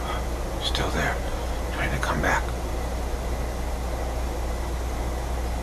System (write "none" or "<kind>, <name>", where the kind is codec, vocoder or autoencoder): none